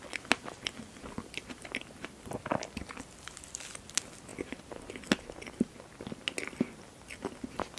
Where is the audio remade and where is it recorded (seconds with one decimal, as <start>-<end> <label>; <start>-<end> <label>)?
0.0-7.8 recorded